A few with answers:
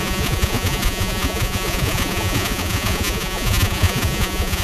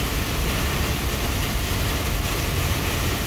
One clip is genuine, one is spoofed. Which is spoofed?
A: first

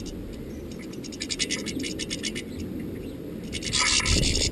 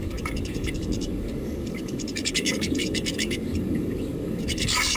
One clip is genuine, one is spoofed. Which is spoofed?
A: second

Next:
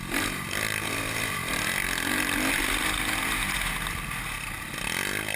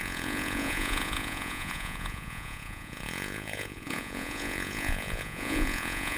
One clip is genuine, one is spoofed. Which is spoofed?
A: second